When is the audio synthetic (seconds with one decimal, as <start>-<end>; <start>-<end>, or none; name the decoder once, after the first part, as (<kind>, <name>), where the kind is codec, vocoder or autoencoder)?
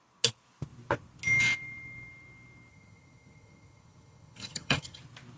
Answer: 2.7-5.0 (vocoder, HiFi-GAN)